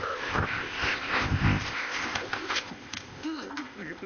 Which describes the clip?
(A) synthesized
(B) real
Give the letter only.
A